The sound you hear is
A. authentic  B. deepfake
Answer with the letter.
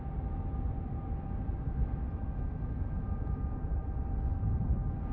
A